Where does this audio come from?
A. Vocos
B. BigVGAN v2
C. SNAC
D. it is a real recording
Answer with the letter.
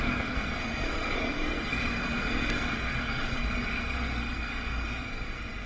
C